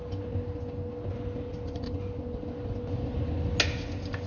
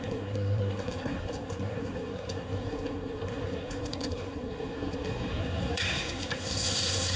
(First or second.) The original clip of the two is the first